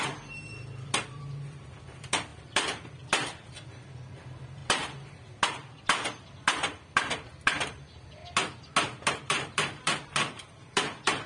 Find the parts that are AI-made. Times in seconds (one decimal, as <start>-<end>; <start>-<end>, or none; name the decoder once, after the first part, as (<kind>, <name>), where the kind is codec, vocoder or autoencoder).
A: 0.0-4.6 (vocoder, BigVGAN v2); 5.5-8.2; 9.1-11.3